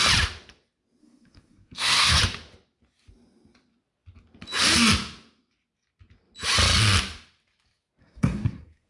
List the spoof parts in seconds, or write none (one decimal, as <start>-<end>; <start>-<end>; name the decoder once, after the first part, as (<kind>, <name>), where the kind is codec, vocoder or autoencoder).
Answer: 1.0-2.2 (codec, SNAC); 8.0-8.9

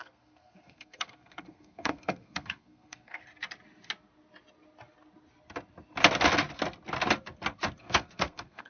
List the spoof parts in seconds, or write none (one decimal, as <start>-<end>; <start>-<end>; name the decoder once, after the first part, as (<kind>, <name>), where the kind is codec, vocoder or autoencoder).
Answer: 0.0-3.2 (codec, SNAC); 7.8-8.7

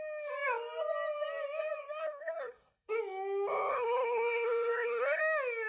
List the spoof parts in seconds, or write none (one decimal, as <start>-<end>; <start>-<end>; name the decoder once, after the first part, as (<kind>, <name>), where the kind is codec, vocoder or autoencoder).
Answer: 2.0-2.9 (codec, SNAC); 3.7-5.2

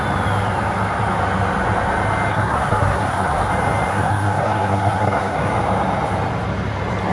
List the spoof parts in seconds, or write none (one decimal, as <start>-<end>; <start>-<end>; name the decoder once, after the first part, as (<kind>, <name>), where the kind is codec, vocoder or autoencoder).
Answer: 2.3-3.5 (codec, SNAC); 3.9-5.5

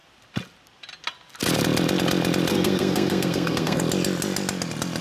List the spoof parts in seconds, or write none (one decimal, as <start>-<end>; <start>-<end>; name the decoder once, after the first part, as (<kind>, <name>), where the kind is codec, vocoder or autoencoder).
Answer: 2.5-3.8 (codec, SNAC)

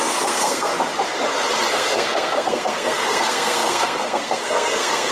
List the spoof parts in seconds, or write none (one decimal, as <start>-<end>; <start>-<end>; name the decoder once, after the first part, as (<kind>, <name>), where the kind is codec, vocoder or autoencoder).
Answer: 0.0-0.7 (codec, SNAC); 1.7-5.1